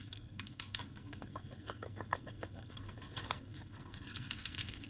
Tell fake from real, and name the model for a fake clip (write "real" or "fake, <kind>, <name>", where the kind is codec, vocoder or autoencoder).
fake, codec, SNAC